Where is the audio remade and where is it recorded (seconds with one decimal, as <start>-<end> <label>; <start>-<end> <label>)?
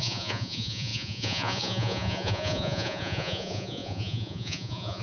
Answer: 0.0-5.0 remade